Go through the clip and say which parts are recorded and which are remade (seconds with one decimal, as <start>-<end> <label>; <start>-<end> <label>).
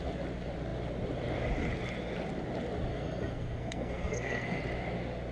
0.0-2.9 recorded; 2.9-4.6 remade; 4.6-5.3 recorded